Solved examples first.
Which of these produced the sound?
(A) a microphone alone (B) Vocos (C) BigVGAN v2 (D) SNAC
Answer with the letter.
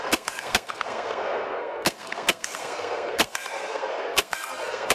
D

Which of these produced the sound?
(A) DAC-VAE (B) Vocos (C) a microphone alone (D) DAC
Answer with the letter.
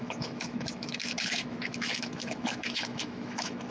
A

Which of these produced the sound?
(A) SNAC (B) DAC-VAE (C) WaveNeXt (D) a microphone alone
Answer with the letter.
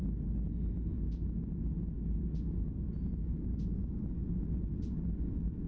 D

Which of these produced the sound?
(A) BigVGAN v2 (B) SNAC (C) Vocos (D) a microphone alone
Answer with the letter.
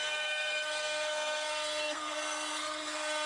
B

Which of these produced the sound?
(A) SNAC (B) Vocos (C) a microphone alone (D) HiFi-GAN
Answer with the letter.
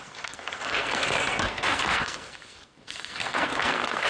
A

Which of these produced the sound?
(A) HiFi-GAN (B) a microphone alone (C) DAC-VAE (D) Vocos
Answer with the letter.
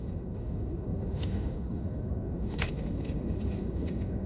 C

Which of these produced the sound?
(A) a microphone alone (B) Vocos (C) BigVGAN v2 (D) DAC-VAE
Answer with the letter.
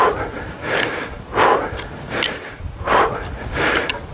C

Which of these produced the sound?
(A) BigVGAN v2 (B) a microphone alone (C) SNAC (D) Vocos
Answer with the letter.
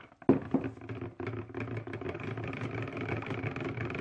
B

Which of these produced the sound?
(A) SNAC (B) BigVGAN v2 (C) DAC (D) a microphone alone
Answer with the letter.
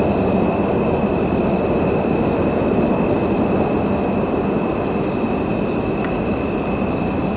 D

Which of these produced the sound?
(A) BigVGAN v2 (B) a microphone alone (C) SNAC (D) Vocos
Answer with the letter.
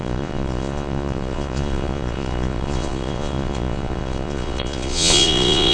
D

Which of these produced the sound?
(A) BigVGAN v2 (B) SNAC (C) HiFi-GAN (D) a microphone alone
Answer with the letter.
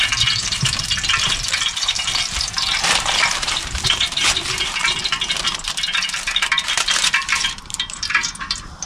A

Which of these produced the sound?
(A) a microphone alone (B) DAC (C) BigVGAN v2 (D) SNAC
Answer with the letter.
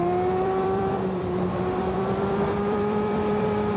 C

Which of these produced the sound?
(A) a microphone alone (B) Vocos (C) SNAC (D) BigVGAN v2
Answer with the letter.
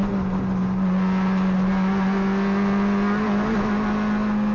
A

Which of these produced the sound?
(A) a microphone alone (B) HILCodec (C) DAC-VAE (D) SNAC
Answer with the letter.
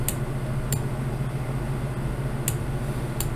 A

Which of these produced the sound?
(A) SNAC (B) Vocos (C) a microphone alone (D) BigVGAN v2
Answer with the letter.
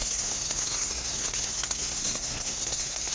A